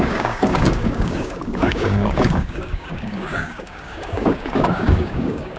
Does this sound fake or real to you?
fake